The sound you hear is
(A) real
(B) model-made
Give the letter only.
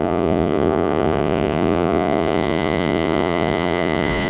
B